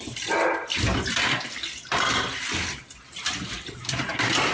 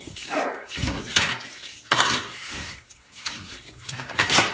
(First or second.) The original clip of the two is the first